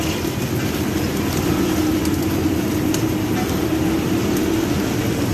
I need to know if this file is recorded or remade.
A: recorded